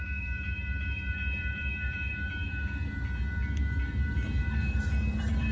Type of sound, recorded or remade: remade